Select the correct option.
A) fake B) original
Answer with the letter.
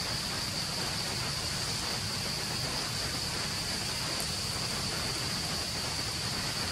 B